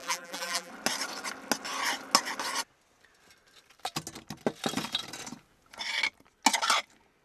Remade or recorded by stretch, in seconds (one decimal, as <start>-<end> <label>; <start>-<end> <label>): 0.0-0.7 remade; 0.7-7.2 recorded